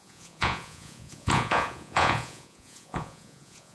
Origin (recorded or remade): remade